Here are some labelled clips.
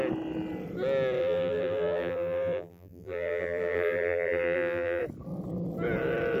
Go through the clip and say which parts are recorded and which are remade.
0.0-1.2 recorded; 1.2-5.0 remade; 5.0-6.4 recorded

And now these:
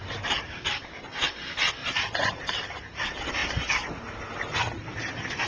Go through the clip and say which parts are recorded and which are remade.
0.0-0.9 remade; 0.9-1.8 recorded; 1.8-2.4 remade; 2.4-3.4 recorded; 3.4-3.9 remade; 3.9-5.5 recorded

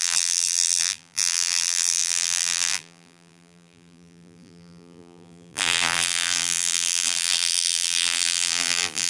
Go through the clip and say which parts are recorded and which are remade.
0.0-9.1 remade

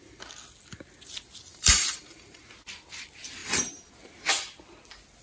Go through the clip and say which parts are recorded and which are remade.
0.0-1.5 recorded; 1.5-2.4 remade; 2.4-3.4 recorded; 3.4-3.9 remade; 3.9-5.2 recorded

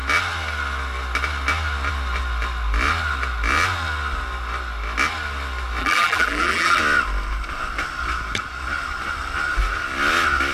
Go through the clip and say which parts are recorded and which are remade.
0.0-5.8 recorded; 5.8-6.8 remade; 6.8-10.5 recorded

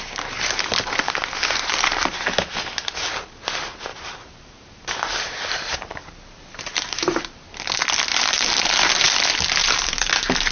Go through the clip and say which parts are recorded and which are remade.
0.0-3.9 recorded; 3.9-7.2 remade; 7.2-8.1 recorded; 8.1-9.1 remade; 9.1-9.6 recorded; 9.6-10.1 remade; 10.1-10.5 recorded

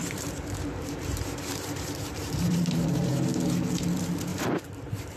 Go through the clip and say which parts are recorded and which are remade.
0.0-3.1 remade; 3.1-4.3 recorded; 4.3-5.2 remade

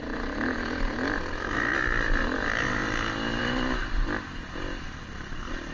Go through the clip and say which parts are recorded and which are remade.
0.0-5.7 recorded